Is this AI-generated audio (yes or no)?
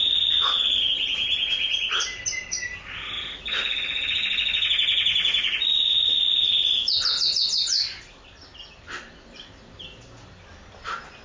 no